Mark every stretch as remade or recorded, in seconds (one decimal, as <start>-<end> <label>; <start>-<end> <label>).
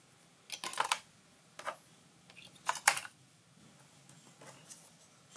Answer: 0.0-3.0 recorded; 3.0-3.6 remade; 3.6-5.4 recorded